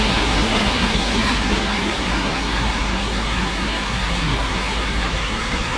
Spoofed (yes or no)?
yes